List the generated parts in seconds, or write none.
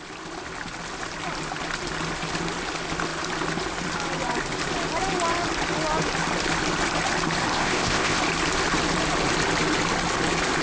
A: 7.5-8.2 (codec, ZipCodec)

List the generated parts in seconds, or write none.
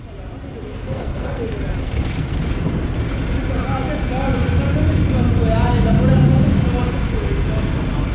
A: 0.7-1.4 (codec, SNAC); 1.8-2.4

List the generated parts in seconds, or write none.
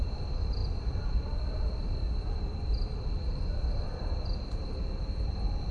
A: 0.6-2.4 (vocoder, BigVGAN v2)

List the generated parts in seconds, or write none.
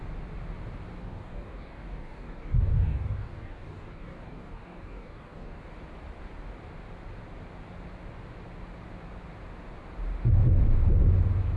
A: 1.0-5.6 (codec, DAC)